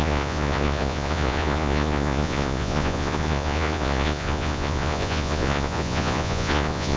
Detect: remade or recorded remade